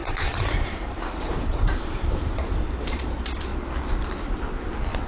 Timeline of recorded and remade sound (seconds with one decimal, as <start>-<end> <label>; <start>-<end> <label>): 0.0-3.5 remade; 3.5-5.1 recorded